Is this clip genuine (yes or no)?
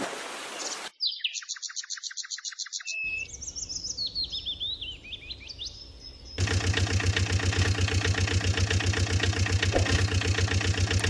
yes